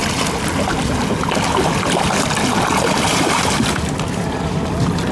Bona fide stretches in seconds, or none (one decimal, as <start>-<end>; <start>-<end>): 0.0-5.1